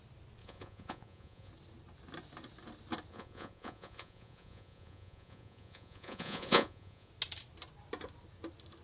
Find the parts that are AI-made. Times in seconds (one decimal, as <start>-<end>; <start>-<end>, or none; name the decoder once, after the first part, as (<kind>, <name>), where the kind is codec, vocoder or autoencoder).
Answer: 0.4-1.5 (vocoder, Vocos); 3.1-7.1